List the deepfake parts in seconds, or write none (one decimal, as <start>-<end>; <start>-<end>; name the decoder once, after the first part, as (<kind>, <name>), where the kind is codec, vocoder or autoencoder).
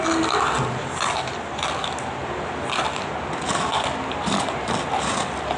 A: none